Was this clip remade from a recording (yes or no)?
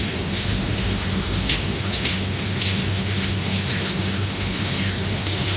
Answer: yes